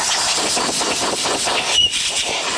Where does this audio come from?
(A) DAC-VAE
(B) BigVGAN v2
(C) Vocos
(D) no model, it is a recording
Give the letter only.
B